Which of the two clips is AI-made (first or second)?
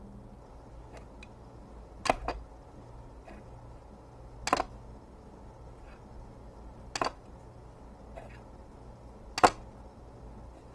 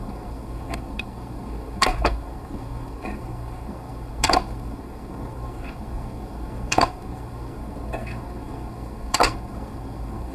second